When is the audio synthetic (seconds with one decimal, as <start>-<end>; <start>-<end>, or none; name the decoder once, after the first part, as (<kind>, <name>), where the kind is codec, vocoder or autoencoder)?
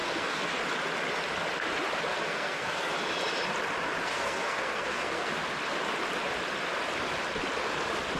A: 0.0-0.6 (codec, SNAC); 2.1-2.9; 4.0-5.3